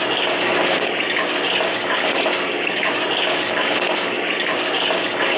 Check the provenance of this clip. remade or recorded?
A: remade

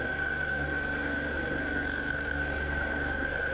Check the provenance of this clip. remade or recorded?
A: remade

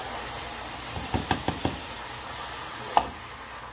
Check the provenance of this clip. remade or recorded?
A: recorded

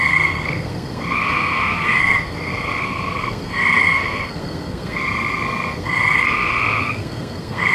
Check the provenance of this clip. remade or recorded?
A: remade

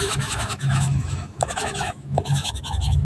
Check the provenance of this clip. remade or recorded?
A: remade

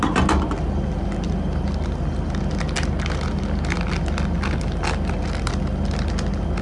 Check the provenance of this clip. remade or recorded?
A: recorded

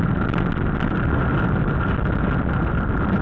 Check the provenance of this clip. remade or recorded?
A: recorded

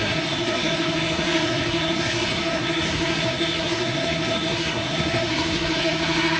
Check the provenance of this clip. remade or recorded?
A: remade